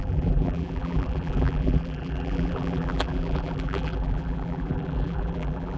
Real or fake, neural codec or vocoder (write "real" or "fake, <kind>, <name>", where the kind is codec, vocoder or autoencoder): fake, vocoder, BigVGAN v2